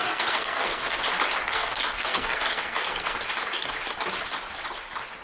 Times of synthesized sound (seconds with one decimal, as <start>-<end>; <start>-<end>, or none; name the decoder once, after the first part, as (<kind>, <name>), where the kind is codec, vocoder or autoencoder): 0.0-1.0 (codec, SNAC); 1.5-3.2